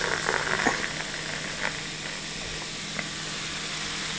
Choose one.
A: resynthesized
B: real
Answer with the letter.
B